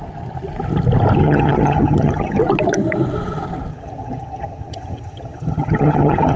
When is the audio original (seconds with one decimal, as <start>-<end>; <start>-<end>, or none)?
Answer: 0.0-1.2; 2.4-3.7